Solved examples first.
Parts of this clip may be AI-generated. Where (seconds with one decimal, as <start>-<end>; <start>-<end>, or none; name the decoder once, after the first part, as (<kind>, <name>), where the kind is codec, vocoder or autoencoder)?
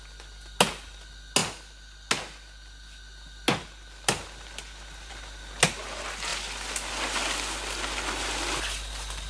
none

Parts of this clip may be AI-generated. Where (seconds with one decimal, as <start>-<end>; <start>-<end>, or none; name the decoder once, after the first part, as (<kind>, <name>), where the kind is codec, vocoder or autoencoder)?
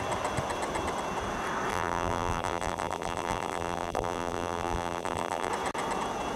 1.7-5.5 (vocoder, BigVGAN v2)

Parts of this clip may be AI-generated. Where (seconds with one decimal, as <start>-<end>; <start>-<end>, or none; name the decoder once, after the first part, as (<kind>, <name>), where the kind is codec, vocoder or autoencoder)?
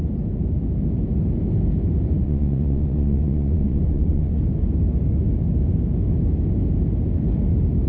2.2-4.4 (vocoder, Vocos)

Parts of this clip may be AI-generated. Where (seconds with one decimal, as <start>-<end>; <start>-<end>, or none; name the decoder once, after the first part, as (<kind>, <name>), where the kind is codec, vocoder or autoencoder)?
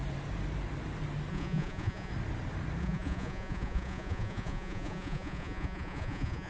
1.3-2.1 (vocoder, Vocos); 2.8-6.5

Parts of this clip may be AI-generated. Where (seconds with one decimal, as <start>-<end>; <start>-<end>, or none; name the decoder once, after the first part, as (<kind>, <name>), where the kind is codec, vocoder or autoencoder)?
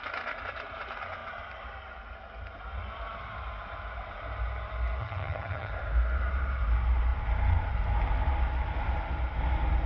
5.0-5.7 (vocoder, HiFi-GAN)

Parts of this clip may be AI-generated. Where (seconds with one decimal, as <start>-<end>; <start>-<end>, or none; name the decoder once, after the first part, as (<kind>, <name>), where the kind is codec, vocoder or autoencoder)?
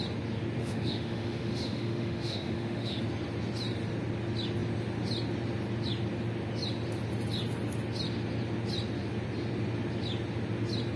0.6-3.0 (autoencoder, DAC-VAE)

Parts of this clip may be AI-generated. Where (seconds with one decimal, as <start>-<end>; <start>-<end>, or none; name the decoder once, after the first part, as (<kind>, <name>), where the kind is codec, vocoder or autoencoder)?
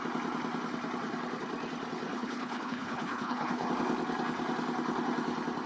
2.1-3.7 (codec, HILCodec)